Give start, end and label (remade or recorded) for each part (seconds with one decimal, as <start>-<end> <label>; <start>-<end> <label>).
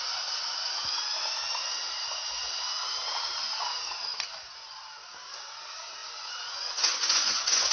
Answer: 0.0-6.0 recorded; 6.0-7.7 remade